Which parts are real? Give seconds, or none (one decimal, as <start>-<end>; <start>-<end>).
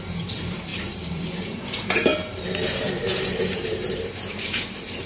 none